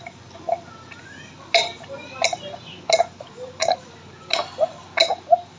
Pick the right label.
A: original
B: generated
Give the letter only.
A